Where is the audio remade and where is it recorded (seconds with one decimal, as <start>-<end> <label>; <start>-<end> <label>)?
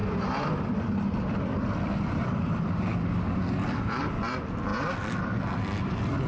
0.0-6.3 remade